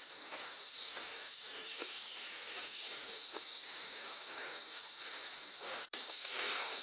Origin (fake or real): fake